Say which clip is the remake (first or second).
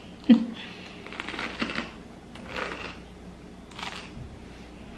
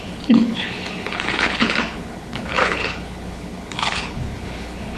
second